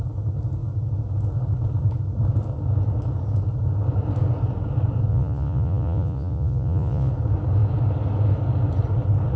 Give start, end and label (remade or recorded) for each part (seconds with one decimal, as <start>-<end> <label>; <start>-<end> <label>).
0.0-5.1 recorded; 5.1-7.1 remade; 7.1-9.4 recorded